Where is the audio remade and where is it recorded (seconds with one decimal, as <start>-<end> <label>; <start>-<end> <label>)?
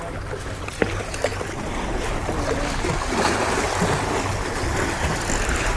0.0-5.8 recorded